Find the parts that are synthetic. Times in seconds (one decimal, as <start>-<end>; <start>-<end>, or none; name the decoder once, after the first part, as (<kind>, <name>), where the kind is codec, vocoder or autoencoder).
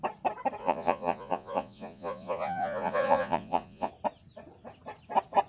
0.6-3.9 (vocoder, Vocos)